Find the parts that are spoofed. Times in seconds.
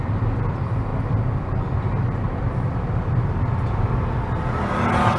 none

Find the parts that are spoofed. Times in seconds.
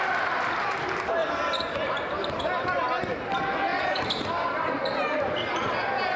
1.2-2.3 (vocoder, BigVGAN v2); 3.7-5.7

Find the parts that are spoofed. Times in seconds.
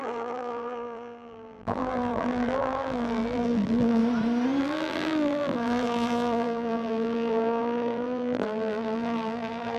0.0-4.0 (vocoder, BigVGAN v2); 4.6-9.8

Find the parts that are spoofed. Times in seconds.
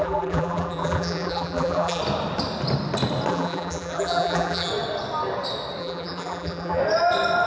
0.0-2.0 (vocoder, BigVGAN v2); 3.3-4.7; 5.8-6.8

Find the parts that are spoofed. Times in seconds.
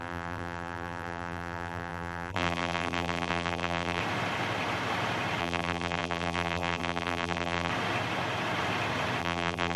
0.0-4.0 (vocoder, BigVGAN v2); 5.4-7.7; 9.2-9.8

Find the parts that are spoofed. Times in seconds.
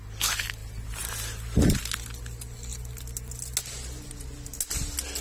0.6-1.8 (vocoder, BigVGAN v2)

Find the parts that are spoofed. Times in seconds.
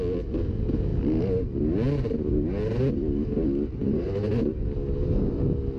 3.8-4.5 (vocoder, BigVGAN v2)